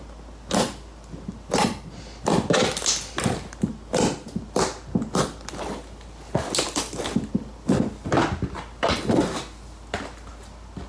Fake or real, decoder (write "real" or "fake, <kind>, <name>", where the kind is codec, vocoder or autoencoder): real